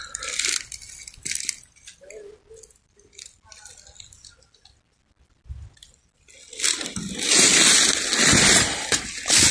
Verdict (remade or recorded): recorded